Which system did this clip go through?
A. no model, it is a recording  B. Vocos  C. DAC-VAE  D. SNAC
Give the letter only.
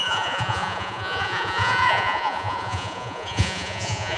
B